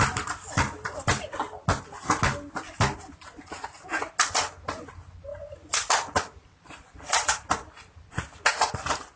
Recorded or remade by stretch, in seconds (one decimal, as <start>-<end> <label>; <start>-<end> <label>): 0.0-5.3 recorded; 5.3-7.5 remade; 7.5-9.2 recorded